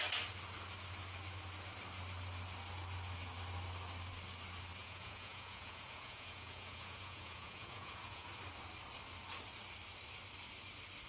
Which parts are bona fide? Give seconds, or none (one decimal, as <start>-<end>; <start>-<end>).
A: 0.0-4.8; 8.3-11.1